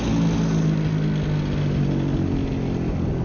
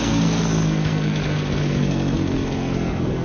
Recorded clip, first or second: first